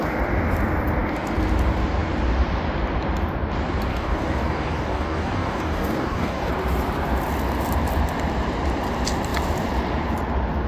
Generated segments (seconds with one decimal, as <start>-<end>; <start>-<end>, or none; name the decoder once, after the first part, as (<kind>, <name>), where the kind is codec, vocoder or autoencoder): 3.9-6.5 (codec, DAC)